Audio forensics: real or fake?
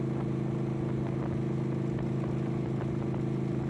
real